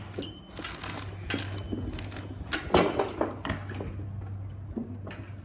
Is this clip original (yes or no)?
yes